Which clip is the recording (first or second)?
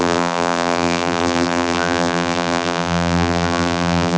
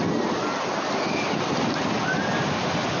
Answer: second